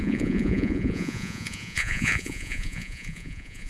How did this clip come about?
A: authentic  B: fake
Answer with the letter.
B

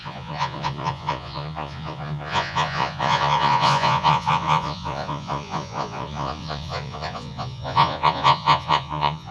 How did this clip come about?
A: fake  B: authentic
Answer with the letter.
A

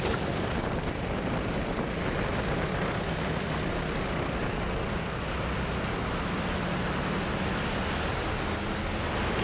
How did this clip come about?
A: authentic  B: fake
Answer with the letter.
A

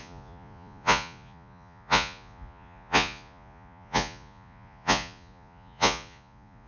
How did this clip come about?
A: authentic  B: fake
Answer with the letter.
B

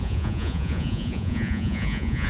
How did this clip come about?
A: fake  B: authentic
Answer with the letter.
A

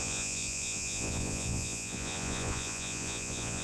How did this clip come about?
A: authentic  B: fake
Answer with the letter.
B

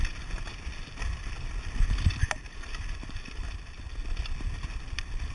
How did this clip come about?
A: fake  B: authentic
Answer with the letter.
B